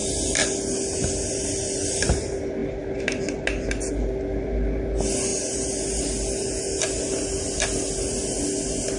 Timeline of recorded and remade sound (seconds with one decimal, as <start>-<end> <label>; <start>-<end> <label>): 0.0-9.0 recorded